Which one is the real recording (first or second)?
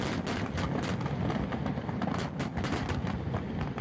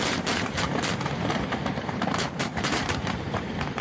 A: first